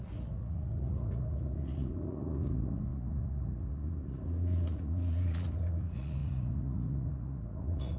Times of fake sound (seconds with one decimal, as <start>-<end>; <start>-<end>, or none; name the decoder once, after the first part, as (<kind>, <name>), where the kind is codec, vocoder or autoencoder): 0.0-8.0 (vocoder, Vocos)